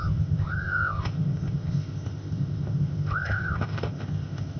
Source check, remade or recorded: remade